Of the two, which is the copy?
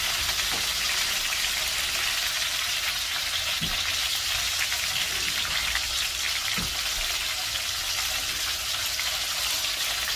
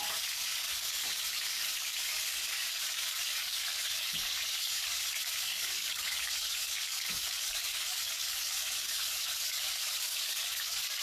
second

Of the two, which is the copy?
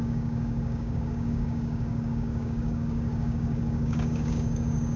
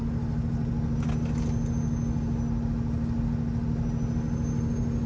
first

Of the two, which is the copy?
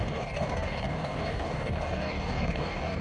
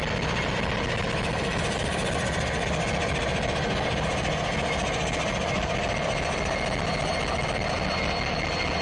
first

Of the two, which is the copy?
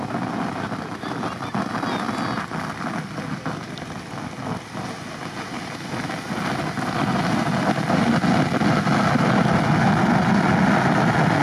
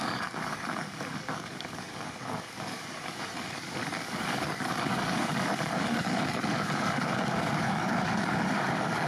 second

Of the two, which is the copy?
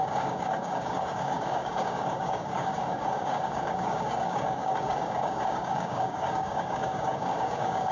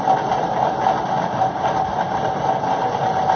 first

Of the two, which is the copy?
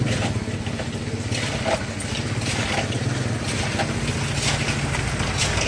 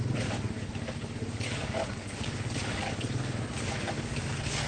second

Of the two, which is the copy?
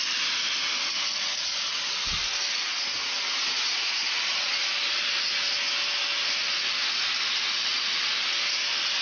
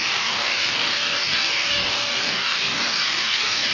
second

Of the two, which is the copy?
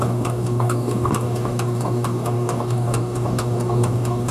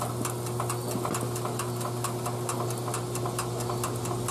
first